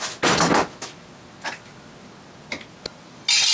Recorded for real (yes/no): yes